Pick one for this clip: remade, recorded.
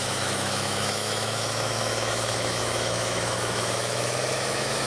remade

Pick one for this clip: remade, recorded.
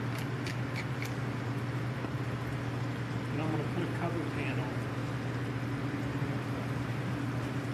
recorded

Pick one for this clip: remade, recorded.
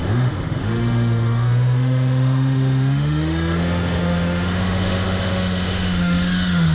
remade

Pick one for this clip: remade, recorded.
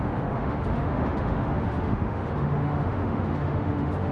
remade